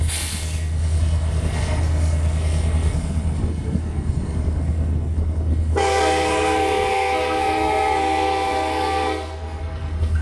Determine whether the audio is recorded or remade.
remade